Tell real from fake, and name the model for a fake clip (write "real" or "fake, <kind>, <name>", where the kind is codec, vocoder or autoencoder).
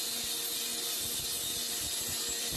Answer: real